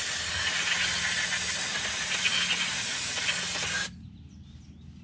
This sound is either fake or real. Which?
real